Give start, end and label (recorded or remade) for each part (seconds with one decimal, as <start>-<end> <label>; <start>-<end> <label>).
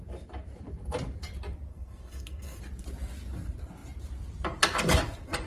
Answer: 0.0-1.7 recorded; 1.7-2.6 remade; 2.6-5.5 recorded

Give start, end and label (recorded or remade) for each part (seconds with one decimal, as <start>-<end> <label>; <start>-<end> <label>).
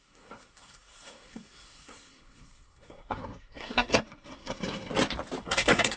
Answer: 0.0-4.9 remade; 4.9-5.4 recorded; 5.4-6.0 remade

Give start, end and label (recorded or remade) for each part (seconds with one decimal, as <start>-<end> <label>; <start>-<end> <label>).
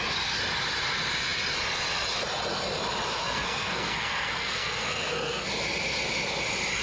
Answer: 0.0-3.2 recorded; 3.2-5.4 remade; 5.4-6.8 recorded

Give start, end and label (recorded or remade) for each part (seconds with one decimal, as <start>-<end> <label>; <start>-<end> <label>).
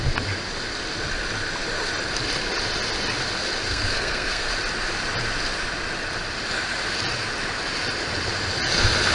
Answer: 0.0-3.7 recorded; 3.7-4.5 remade; 4.5-9.1 recorded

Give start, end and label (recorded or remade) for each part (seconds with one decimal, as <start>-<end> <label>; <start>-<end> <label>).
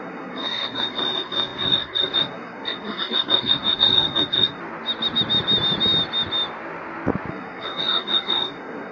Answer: 0.0-4.6 remade; 4.6-7.3 recorded; 7.3-8.9 remade